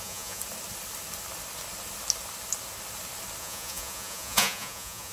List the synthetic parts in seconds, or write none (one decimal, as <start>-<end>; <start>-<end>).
0.0-0.4; 3.4-5.1